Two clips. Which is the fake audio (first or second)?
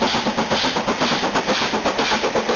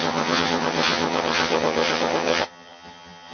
second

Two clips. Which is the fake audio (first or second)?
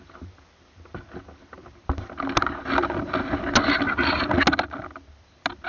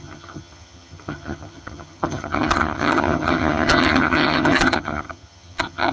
second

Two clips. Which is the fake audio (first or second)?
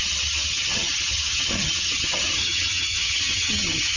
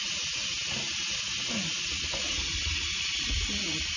first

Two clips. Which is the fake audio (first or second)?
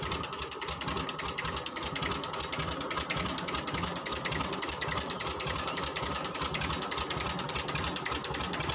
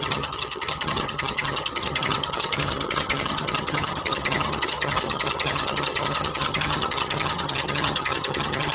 second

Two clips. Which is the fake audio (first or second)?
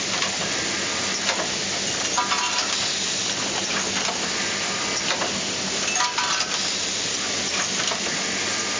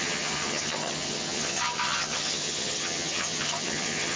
second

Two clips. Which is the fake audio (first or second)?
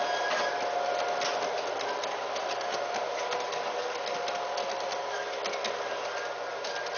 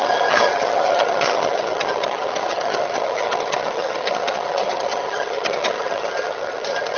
second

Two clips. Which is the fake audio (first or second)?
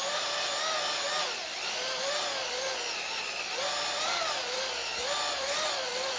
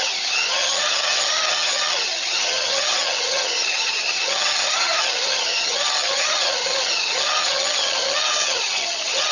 second